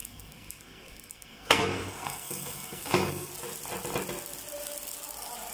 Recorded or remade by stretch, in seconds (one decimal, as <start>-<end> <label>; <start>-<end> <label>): 0.0-3.3 remade; 3.3-5.5 recorded